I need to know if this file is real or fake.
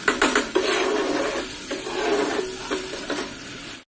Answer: real